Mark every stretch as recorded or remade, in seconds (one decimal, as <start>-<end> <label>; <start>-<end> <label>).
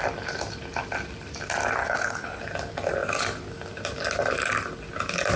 0.0-1.8 recorded; 1.8-2.4 remade; 2.4-5.4 recorded